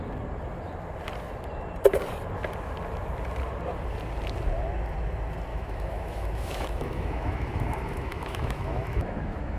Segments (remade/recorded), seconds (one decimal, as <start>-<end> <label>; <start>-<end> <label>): 0.0-5.5 recorded; 5.5-9.6 remade